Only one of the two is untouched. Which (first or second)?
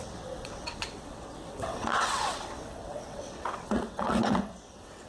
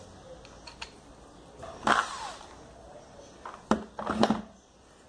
second